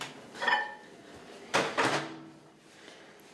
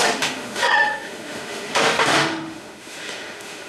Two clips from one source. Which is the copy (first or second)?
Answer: second